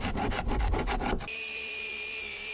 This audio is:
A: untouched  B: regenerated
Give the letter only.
B